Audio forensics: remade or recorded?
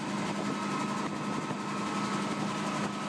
recorded